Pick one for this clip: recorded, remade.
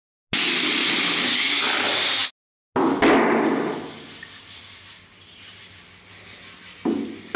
recorded